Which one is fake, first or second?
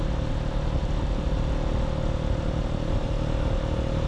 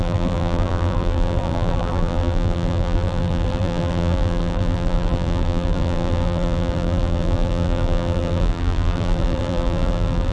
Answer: second